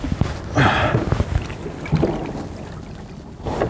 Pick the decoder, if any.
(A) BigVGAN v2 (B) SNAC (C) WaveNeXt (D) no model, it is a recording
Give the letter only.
D